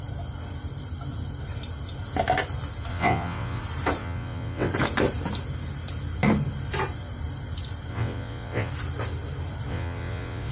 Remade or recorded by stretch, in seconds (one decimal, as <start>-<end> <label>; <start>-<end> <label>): 0.0-2.9 recorded; 2.9-3.6 remade; 3.6-4.0 recorded; 4.0-4.7 remade; 4.7-7.9 recorded; 7.9-8.7 remade; 8.7-9.7 recorded; 9.7-10.5 remade